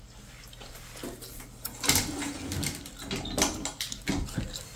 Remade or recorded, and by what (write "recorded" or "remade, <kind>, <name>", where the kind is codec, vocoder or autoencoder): recorded